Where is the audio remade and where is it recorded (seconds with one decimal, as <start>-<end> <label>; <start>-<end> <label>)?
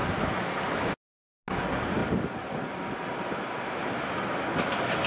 0.0-5.1 recorded